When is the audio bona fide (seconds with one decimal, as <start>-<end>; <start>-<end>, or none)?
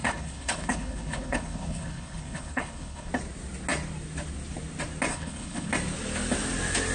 3.1-5.1; 5.7-6.9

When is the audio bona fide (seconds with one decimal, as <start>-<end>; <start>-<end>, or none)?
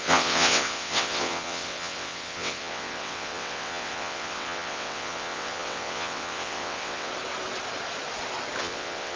7.1-8.6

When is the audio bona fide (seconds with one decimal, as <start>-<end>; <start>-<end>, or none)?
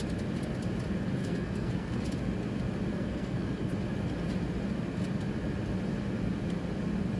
0.0-1.2; 2.0-2.9; 3.7-7.2